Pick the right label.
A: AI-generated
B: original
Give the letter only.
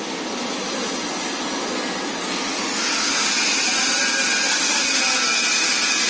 B